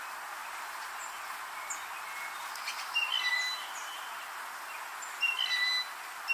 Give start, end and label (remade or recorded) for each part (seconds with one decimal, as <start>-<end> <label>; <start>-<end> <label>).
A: 0.0-0.4 recorded; 0.4-1.2 remade; 1.2-6.3 recorded